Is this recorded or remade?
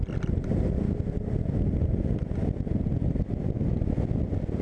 recorded